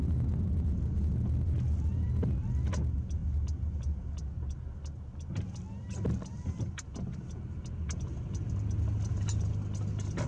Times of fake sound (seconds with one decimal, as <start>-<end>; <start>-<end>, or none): none